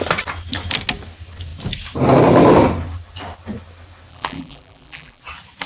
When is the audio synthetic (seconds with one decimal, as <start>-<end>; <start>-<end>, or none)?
4.1-5.2